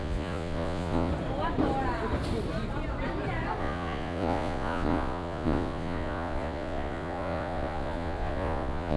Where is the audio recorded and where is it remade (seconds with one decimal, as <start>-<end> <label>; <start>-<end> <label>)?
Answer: 0.0-1.1 remade; 1.1-3.6 recorded; 3.6-9.0 remade

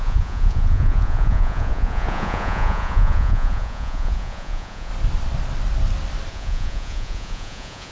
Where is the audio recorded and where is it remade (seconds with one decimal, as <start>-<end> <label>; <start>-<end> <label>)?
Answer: 0.0-4.9 remade; 4.9-6.3 recorded; 6.3-7.9 remade